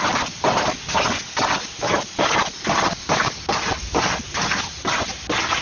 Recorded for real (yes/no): yes